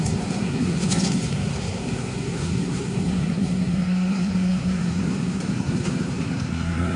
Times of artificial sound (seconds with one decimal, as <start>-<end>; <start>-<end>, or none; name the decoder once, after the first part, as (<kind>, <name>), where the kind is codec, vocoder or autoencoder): 0.0-7.0 (codec, SNAC)